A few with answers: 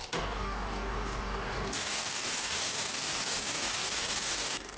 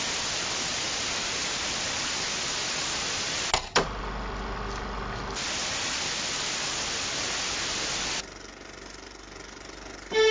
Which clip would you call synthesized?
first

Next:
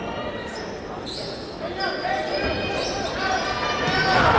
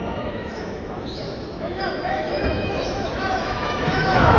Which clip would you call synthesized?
second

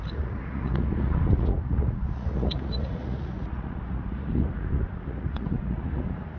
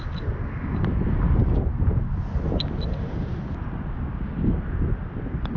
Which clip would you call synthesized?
first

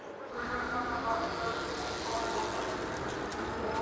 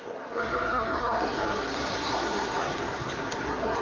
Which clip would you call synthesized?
second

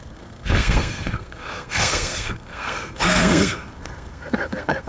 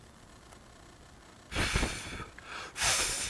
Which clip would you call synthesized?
first